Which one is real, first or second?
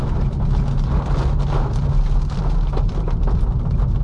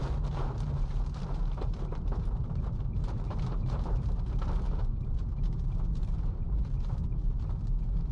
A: first